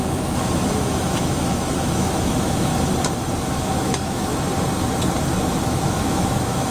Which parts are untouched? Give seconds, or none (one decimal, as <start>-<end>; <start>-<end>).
2.7-3.5; 4.3-5.6